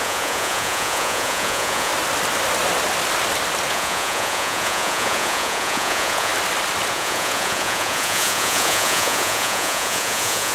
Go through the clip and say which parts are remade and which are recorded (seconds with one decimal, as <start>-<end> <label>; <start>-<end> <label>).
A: 0.0-1.9 remade; 1.9-3.7 recorded; 3.7-6.3 remade; 6.3-6.9 recorded; 6.9-10.5 remade